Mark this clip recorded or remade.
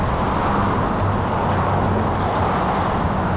recorded